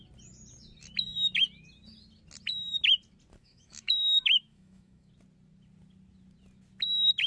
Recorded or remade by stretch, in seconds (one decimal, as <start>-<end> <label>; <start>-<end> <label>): 0.0-3.4 recorded; 3.4-5.1 remade; 5.1-7.3 recorded

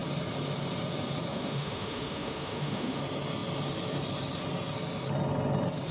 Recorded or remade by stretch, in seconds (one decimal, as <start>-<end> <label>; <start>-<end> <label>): 0.0-1.3 recorded; 1.3-3.0 remade; 3.0-5.9 recorded

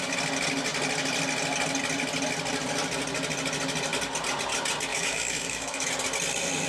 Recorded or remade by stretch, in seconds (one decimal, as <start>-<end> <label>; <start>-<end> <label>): 0.0-4.9 recorded; 4.9-5.9 remade; 5.9-6.7 recorded

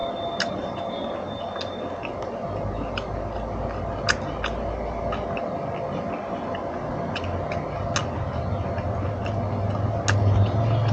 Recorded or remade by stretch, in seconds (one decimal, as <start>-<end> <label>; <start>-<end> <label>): 0.0-10.9 recorded

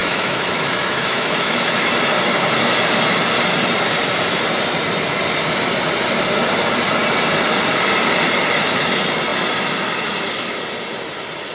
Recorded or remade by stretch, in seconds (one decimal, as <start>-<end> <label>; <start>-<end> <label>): 0.0-1.9 remade; 1.9-11.5 recorded

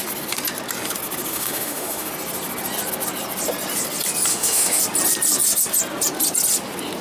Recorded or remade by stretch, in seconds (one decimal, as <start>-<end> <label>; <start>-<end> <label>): 0.0-1.3 recorded; 1.3-2.1 remade; 2.1-4.3 recorded; 4.3-4.8 remade; 4.8-7.0 recorded